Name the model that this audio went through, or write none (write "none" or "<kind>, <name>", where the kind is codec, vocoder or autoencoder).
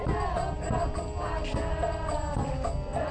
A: none